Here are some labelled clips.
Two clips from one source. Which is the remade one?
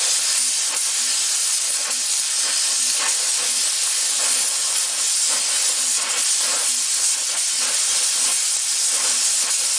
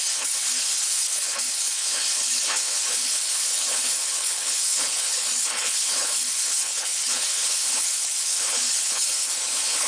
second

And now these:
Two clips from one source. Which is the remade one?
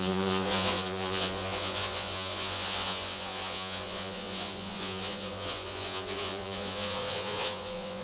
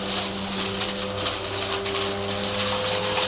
first